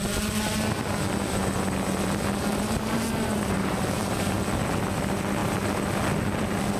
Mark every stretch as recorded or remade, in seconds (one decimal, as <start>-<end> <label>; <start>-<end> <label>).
0.0-2.5 recorded; 2.5-4.4 remade; 4.4-5.4 recorded; 5.4-5.9 remade; 5.9-6.8 recorded